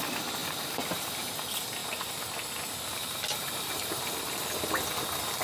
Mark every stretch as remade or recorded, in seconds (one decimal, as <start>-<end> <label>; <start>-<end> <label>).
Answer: 0.0-0.4 recorded; 0.4-1.3 remade; 1.3-3.0 recorded; 3.0-3.9 remade; 3.9-5.4 recorded